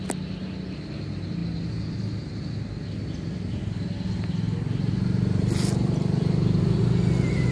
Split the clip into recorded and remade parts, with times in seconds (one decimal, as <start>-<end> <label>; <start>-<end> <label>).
0.0-7.5 recorded